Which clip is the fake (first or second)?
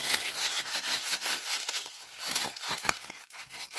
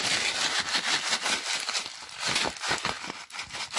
first